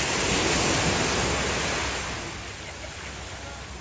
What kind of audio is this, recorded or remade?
recorded